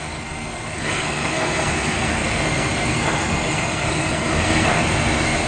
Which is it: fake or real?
fake